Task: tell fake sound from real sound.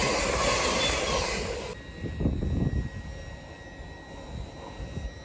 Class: real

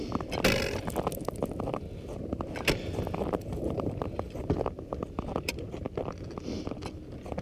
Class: real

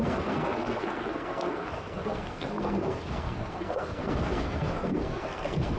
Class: fake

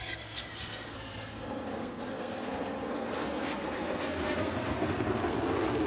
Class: fake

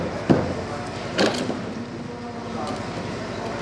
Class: real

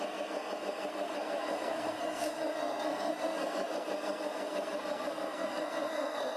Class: fake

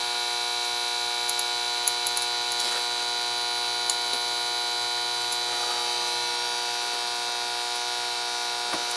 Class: real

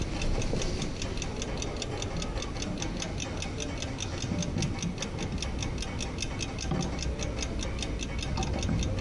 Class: real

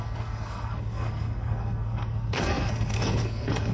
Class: fake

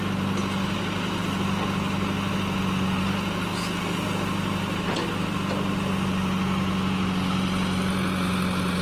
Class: real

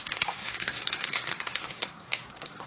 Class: fake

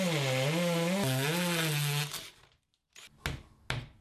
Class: real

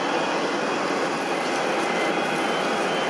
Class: real